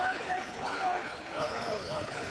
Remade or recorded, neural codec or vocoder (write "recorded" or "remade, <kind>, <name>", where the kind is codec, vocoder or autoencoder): remade, codec, HILCodec